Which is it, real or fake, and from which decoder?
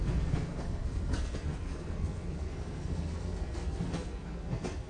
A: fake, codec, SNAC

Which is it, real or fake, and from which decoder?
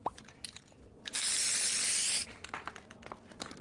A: real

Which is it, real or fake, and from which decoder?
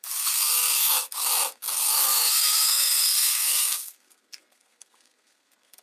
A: fake, codec, SNAC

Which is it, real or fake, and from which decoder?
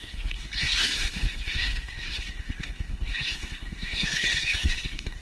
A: fake, codec, SNAC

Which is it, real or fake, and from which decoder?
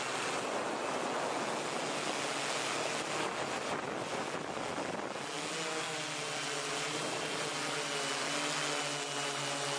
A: real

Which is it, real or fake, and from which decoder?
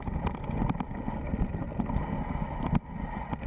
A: real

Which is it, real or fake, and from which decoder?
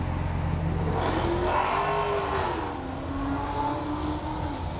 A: real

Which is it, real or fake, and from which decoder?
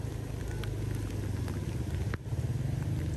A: real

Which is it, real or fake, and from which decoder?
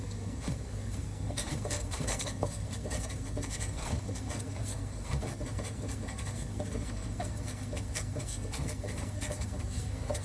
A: fake, codec, SNAC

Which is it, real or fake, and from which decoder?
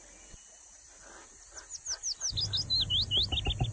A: real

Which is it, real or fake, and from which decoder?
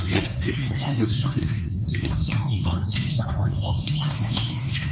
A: fake, codec, SNAC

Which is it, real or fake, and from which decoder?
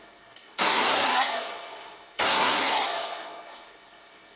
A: fake, codec, SNAC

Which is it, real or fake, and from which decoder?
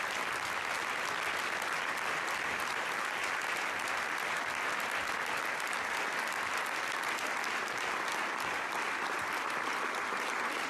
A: real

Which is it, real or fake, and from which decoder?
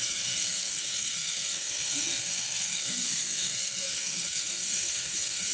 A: fake, codec, SNAC